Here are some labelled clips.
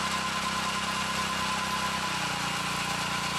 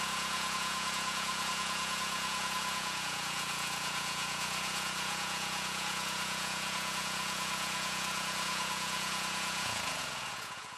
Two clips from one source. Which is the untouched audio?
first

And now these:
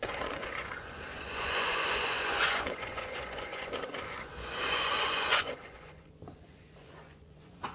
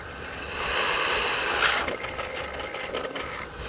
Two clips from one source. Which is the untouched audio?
second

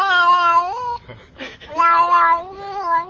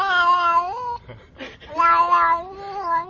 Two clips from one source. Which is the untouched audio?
second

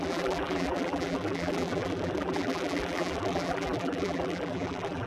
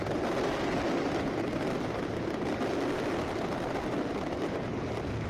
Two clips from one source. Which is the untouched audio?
second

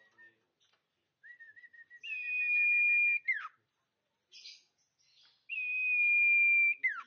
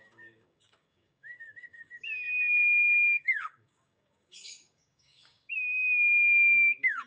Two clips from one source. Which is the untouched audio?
first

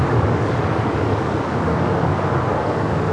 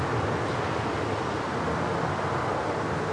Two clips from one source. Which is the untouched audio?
second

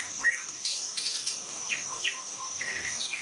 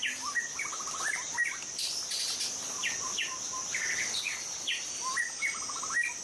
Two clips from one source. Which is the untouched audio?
second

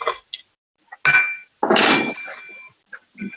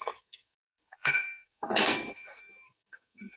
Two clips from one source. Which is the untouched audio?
first